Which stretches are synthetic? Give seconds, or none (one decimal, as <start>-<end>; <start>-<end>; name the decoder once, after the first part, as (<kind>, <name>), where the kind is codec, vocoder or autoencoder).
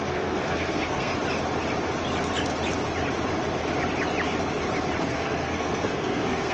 0.0-1.1 (codec, SNAC); 5.0-6.5